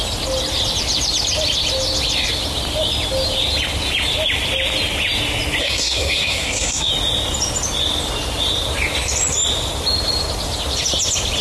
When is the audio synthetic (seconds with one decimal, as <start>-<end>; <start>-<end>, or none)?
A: 5.6-6.9